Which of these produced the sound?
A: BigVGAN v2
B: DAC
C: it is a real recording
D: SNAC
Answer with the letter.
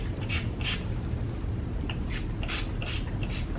C